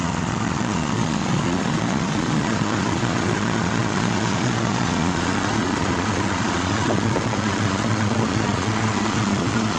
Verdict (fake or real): fake